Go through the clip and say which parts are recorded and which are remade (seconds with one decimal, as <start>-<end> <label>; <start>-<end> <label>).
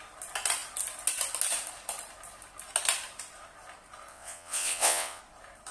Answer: 0.0-4.1 recorded; 4.1-5.2 remade; 5.2-5.7 recorded